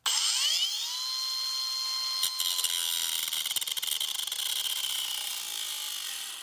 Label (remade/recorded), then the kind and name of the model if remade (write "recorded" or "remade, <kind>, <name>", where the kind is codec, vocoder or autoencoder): recorded